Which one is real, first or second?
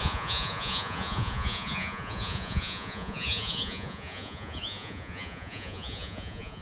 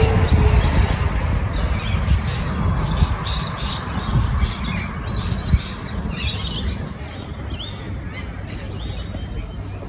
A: second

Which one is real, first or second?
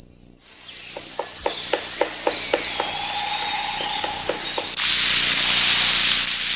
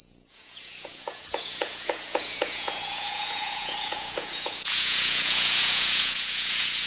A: first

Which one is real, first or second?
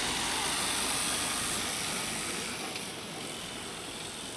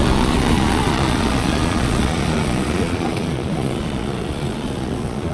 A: first